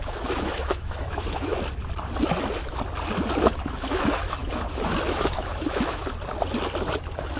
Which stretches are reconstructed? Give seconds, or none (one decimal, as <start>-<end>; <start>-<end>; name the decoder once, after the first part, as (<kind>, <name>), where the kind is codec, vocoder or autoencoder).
0.0-1.5 (autoencoder, DAC-VAE); 3.7-6.0